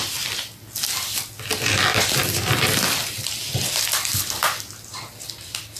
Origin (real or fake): real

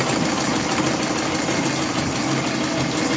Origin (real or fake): real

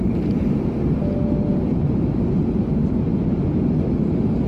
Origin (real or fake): real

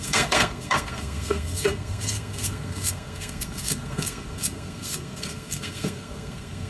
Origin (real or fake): fake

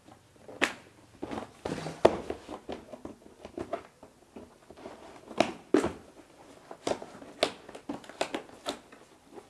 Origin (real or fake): real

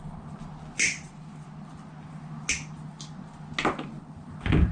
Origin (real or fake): real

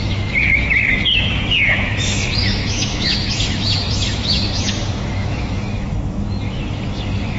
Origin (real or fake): fake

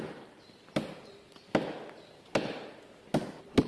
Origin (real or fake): real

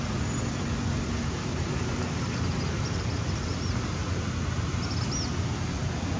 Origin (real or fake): real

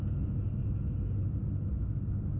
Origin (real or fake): real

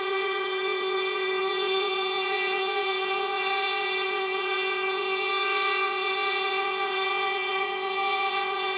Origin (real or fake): fake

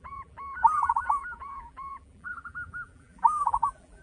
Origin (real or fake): fake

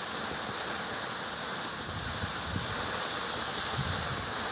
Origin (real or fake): real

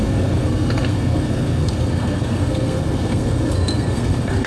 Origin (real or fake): fake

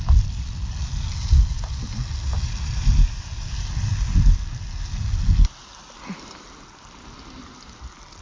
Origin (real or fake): real